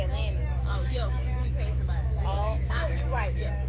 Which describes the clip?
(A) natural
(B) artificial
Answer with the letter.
B